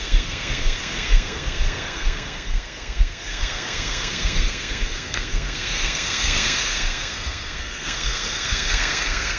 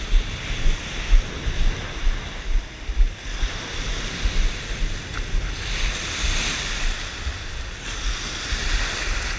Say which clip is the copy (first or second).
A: first